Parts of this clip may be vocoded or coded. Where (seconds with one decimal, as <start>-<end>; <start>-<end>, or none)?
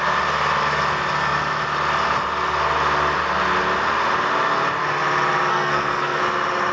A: 5.5-6.2